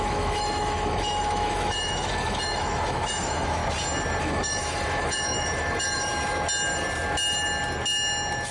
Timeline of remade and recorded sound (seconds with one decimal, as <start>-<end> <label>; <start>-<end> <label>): 0.0-3.6 remade; 3.6-4.2 recorded; 4.2-6.1 remade; 6.1-8.5 recorded